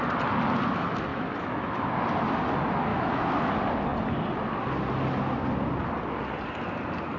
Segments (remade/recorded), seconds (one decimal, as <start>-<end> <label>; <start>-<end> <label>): 0.0-1.1 recorded; 1.1-1.9 remade; 1.9-2.9 recorded; 2.9-3.5 remade; 3.5-7.2 recorded